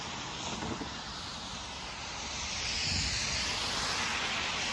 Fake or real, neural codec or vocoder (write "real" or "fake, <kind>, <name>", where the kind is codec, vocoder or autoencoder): real